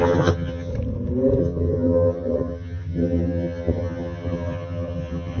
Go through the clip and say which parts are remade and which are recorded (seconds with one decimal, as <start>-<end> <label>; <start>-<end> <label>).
0.0-0.7 remade; 0.7-1.4 recorded; 1.4-5.4 remade